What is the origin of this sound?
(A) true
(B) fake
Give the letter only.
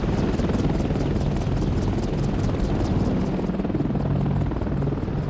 A